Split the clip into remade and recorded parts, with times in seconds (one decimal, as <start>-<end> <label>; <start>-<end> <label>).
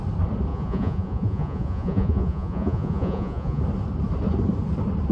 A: 0.0-0.5 recorded; 0.5-3.6 remade; 3.6-5.1 recorded